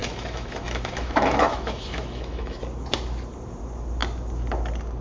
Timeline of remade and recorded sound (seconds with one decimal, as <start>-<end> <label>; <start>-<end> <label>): 0.0-2.6 remade; 2.6-5.0 recorded